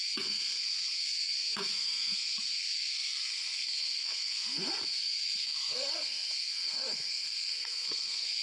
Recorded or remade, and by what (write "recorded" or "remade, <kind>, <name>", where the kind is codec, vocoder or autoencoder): remade, codec, SNAC